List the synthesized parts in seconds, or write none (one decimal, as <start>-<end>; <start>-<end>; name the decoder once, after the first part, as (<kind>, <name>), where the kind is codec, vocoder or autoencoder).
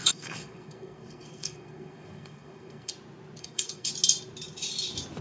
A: 0.0-2.9 (codec, SNAC); 3.4-3.9